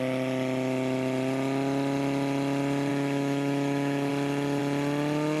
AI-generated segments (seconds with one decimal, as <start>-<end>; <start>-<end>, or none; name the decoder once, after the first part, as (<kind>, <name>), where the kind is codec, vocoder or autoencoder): 2.9-4.1 (autoencoder, DAC-VAE)